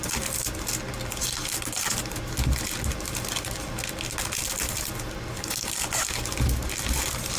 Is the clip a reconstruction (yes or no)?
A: no